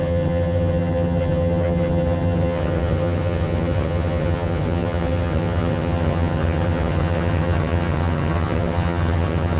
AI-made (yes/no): yes